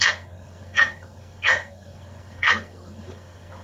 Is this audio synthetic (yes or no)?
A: yes